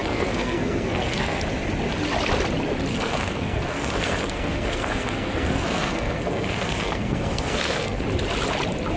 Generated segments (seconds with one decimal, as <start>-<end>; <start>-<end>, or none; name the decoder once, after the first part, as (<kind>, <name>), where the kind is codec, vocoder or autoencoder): 0.0-1.4 (codec, SNAC); 2.9-8.0